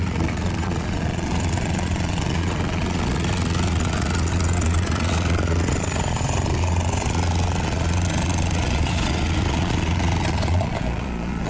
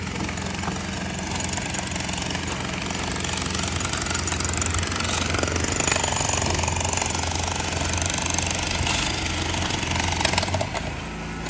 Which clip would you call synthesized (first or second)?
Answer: first